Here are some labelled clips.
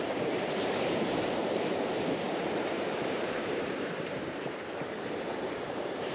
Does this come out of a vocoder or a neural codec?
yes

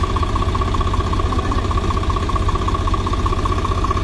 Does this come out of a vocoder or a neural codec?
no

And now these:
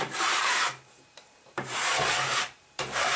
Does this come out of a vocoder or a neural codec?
yes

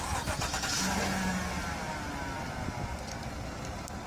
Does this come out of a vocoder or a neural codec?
no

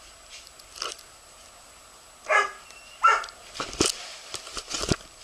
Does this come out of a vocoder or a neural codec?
no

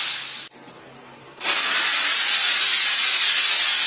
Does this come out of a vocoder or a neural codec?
no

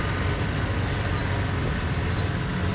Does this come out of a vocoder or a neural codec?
no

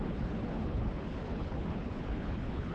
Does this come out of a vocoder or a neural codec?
yes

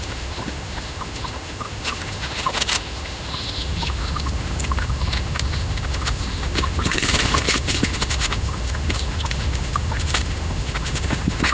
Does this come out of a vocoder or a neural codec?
yes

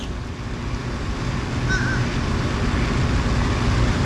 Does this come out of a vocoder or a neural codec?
no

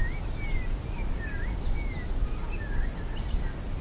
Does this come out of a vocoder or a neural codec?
no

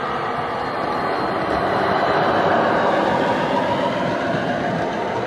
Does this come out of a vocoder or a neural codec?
no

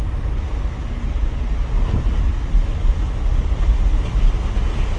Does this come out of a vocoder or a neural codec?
no